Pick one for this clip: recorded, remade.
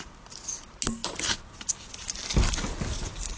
recorded